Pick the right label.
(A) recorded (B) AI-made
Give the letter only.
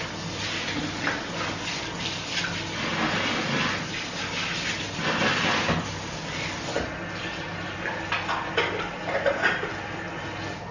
A